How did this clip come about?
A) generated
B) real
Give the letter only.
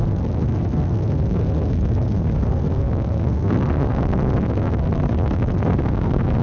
A